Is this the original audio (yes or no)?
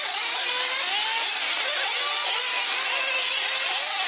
yes